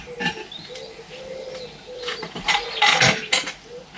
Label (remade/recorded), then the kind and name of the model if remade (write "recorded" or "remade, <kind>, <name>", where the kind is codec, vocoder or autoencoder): recorded